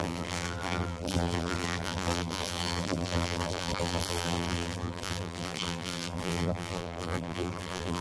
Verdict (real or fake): fake